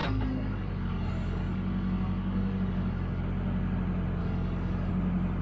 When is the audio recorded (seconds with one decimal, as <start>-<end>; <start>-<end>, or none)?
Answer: 3.2-4.2; 4.9-5.4